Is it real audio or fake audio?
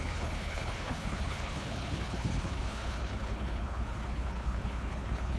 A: fake